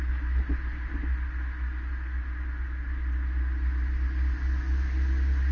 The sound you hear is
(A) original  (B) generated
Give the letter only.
A